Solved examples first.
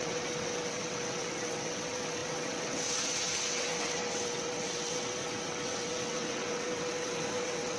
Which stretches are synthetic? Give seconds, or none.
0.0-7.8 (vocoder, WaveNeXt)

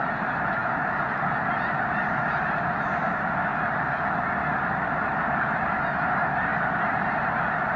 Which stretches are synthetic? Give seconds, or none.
3.5-5.3 (vocoder, BigVGAN v2); 6.5-7.8

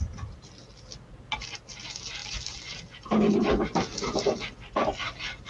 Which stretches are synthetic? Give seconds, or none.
2.2-5.5 (vocoder, BigVGAN v2)